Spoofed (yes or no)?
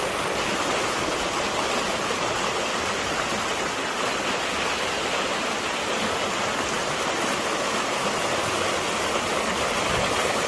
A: no